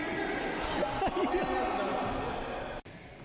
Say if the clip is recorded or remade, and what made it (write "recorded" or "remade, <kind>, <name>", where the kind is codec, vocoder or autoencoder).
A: recorded